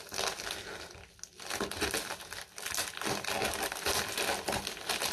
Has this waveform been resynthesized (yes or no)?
no